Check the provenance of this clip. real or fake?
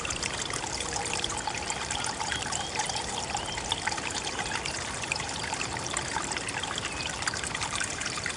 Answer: fake